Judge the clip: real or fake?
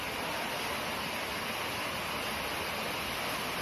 real